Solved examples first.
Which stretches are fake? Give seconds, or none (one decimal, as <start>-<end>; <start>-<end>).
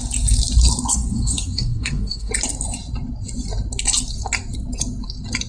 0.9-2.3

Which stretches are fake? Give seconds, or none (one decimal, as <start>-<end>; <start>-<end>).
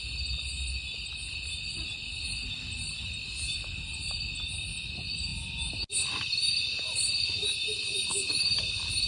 none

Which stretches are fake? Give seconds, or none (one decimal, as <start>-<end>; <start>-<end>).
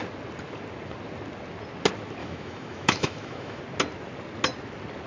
2.2-3.6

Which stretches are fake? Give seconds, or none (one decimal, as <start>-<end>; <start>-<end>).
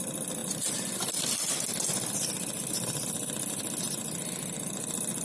none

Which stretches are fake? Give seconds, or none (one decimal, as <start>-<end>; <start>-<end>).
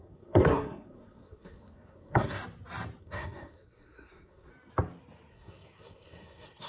0.0-2.4; 3.0-4.5; 5.3-6.7